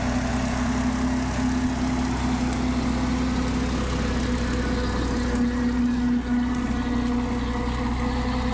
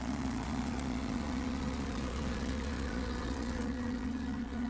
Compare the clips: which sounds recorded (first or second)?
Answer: first